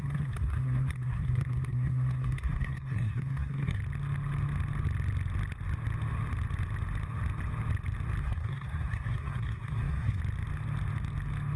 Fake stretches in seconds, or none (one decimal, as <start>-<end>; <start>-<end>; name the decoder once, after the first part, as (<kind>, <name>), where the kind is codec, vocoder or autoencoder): 0.0-3.8 (codec, SNAC); 8.2-10.2